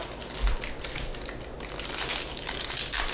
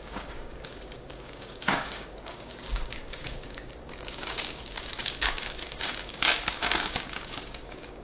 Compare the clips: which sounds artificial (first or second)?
second